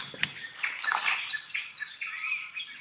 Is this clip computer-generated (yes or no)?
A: no